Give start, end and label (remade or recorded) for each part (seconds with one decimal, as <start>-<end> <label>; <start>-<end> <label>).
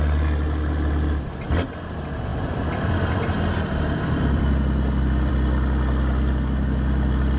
0.0-2.3 recorded; 2.3-5.3 remade; 5.3-7.4 recorded